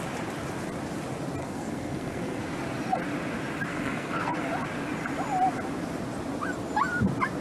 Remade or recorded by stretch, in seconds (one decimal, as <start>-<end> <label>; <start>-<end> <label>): 0.0-1.4 recorded; 1.4-2.4 remade; 2.4-3.7 recorded; 3.7-4.5 remade; 4.5-7.4 recorded